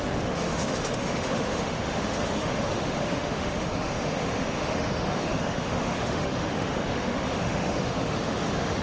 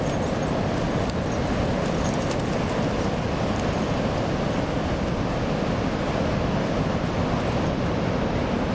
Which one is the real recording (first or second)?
second